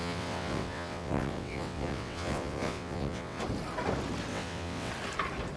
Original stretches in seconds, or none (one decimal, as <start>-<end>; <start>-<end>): 3.4-4.3; 4.9-5.6